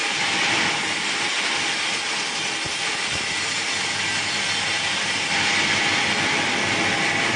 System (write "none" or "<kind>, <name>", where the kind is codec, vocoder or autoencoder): none